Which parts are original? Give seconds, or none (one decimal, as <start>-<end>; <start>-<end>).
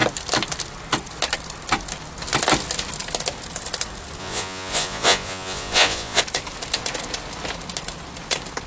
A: 0.0-4.2; 6.2-8.7